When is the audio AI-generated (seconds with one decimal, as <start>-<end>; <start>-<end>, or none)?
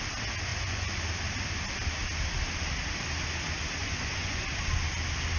0.5-1.0; 3.8-4.5